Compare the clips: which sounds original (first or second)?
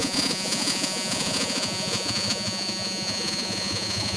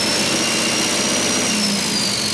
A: second